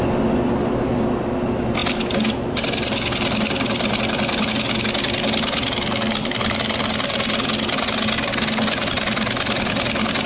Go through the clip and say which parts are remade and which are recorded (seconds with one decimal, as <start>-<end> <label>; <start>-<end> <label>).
0.0-10.3 recorded